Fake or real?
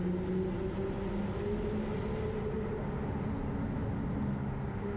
real